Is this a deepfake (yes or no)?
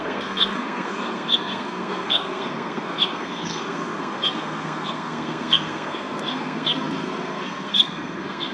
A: yes